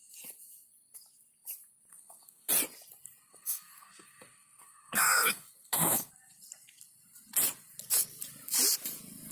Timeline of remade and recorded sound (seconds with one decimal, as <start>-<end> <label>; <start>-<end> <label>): 0.0-1.9 recorded; 1.9-2.5 remade; 2.5-3.3 recorded; 3.3-6.1 remade; 6.1-9.3 recorded